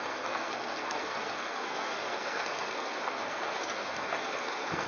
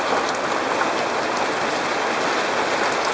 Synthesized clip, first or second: first